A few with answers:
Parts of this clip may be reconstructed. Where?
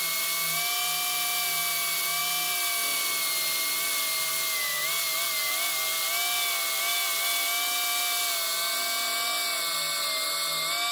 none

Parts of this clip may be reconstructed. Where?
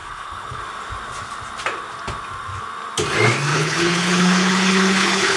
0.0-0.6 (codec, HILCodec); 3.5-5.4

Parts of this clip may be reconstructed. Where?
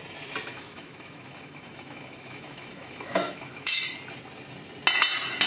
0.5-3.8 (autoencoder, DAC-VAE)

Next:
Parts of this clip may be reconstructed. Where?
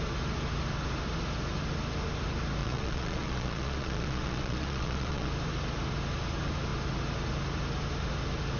2.6-5.3 (vocoder, Vocos)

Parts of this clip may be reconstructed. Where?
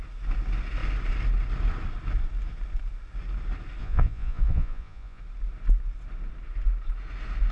3.8-5.2 (vocoder, Vocos)